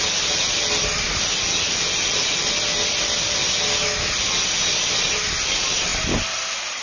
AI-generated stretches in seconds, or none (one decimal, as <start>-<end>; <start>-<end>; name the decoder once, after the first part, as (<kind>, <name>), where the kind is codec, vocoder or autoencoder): none